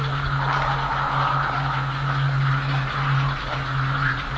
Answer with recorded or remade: recorded